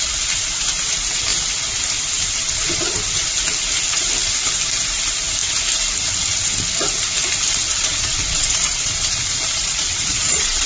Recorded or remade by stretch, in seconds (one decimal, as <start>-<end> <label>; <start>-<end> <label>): 0.0-7.6 recorded; 7.6-10.7 remade